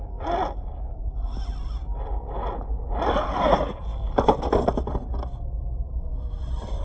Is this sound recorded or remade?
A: recorded